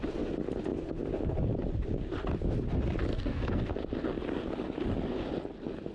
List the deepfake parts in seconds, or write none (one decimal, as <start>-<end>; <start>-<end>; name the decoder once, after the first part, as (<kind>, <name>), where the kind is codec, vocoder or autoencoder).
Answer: 3.1-3.7 (codec, SNAC)